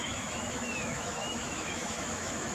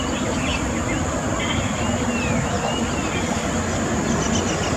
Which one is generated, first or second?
first